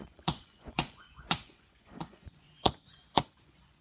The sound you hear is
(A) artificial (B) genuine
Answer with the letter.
A